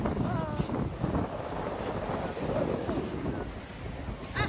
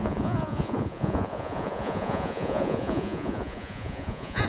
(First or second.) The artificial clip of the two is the second